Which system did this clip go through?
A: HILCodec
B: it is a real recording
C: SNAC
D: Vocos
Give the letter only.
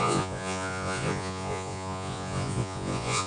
D